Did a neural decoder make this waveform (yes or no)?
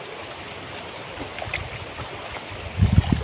no